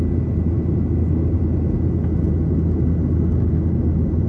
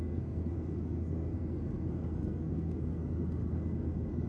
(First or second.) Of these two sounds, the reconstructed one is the second